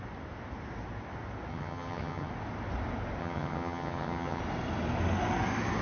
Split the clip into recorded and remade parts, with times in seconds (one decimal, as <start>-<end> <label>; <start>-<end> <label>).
0.0-1.5 recorded; 1.5-2.3 remade; 2.3-3.2 recorded; 3.2-4.4 remade; 4.4-5.8 recorded